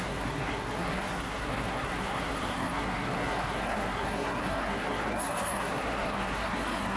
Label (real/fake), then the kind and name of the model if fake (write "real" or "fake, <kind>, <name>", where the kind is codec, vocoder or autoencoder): fake, codec, SNAC